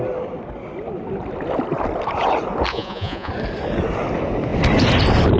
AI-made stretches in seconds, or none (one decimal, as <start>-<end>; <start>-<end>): 2.7-3.3